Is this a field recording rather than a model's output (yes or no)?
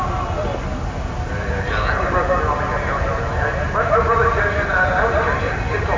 yes